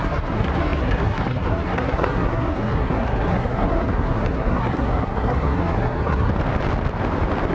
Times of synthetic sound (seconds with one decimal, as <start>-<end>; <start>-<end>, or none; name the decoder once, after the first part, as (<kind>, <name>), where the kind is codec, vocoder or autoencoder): 0.0-6.3 (codec, SNAC)